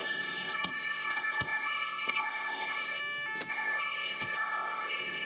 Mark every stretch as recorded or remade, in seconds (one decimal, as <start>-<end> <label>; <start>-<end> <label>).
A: 0.0-3.0 remade; 3.0-3.5 recorded; 3.5-5.3 remade